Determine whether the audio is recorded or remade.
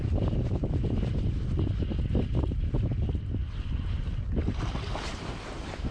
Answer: recorded